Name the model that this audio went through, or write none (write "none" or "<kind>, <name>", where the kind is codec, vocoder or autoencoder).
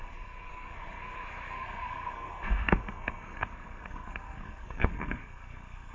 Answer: codec, SNAC